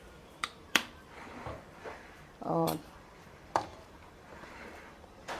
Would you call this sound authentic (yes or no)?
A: no